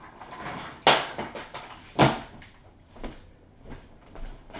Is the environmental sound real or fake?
real